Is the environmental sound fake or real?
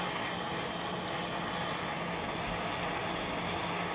real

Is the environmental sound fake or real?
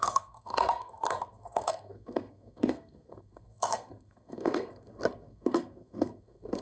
fake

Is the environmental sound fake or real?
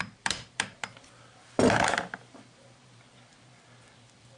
fake